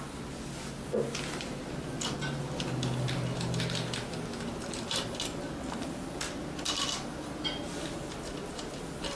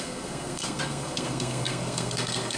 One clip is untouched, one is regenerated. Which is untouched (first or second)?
first